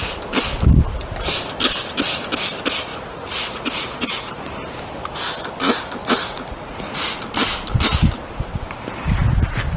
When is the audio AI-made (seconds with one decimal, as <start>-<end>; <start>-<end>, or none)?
2.9-4.5; 6.0-7.2